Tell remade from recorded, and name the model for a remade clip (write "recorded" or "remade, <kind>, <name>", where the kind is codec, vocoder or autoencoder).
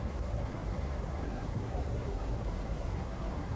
remade, codec, SNAC